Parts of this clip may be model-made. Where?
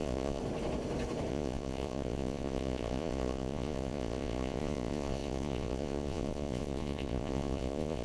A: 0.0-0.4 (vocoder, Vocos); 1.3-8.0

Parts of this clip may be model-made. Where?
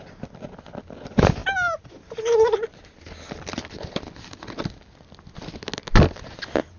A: none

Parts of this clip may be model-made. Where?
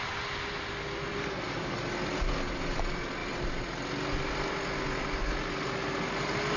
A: none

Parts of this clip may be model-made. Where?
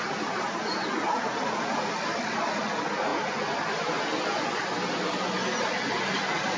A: none